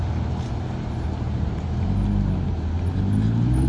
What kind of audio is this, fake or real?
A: real